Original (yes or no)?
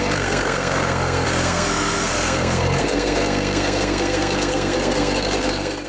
no